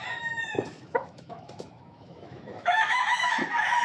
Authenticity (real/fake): fake